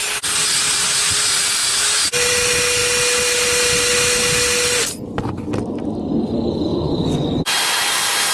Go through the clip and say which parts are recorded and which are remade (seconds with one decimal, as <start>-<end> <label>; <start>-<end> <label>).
0.0-6.7 recorded; 6.7-7.4 remade; 7.4-8.3 recorded